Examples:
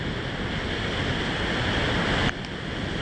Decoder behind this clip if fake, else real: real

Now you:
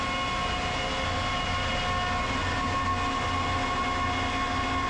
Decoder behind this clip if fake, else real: real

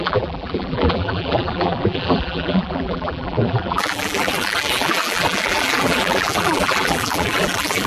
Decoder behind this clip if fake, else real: fake, vocoder, BigVGAN v2